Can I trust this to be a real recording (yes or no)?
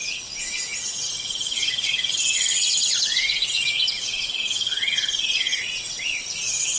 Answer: no